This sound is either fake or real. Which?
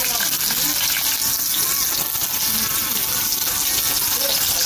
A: real